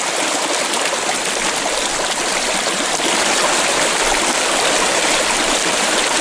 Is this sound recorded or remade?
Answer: recorded